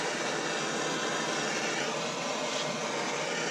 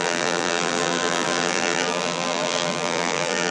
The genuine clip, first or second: first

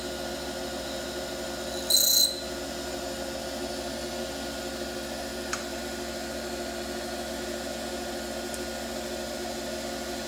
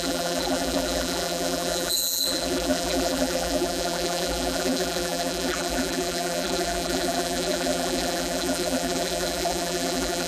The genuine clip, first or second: first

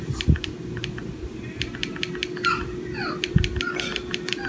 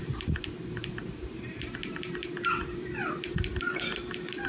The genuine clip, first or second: first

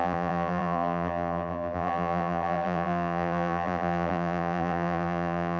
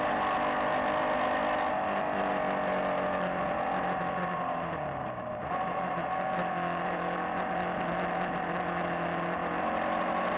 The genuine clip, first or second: second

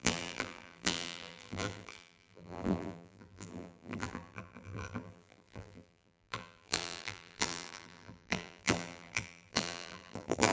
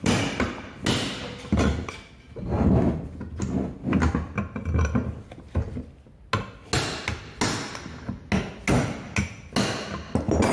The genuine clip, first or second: second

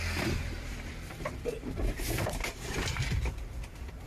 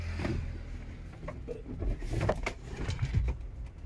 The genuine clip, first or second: second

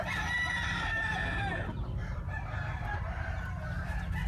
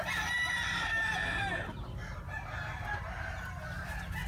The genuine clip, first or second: second